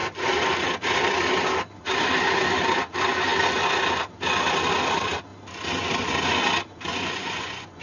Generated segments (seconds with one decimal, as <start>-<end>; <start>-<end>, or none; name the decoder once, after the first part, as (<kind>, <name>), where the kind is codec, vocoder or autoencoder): 6.9-7.8 (vocoder, Vocos)